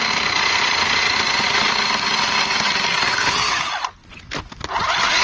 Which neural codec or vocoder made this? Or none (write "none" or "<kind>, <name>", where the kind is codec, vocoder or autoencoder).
none